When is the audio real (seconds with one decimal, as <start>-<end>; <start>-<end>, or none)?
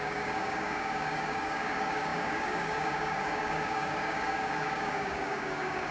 none